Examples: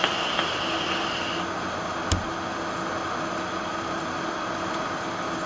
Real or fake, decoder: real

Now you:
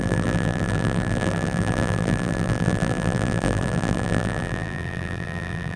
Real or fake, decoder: fake, vocoder, BigVGAN v2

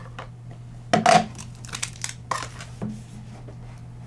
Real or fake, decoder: real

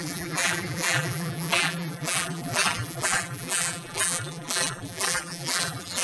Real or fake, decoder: fake, vocoder, BigVGAN v2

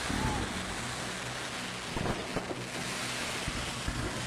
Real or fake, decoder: real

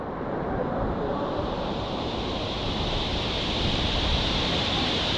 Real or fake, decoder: fake, vocoder, BigVGAN v2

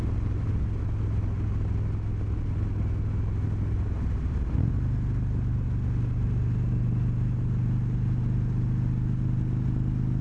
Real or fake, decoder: real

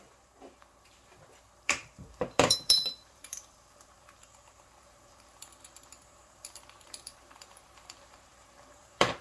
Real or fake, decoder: fake, vocoder, BigVGAN v2